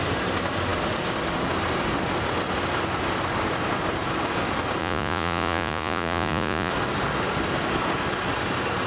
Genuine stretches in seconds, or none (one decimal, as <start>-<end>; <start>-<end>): 0.0-4.8; 6.7-8.9